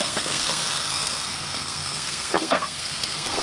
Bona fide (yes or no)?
no